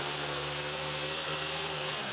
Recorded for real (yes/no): no